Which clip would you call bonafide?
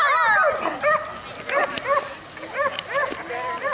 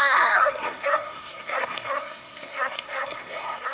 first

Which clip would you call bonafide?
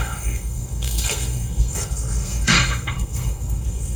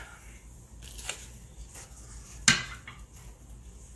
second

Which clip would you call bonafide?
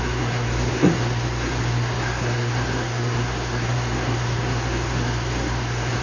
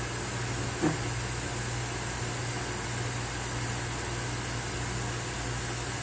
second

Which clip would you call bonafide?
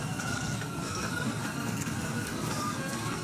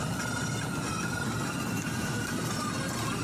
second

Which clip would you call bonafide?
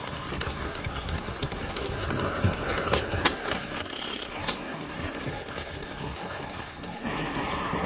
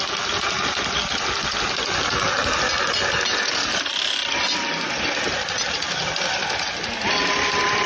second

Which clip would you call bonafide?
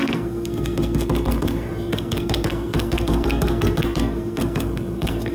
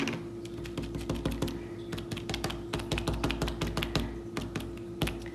second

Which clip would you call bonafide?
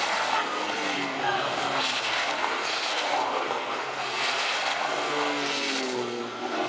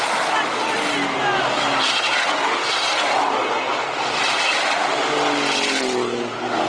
second